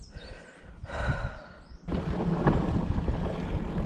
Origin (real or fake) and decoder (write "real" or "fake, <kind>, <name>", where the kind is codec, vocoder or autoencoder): real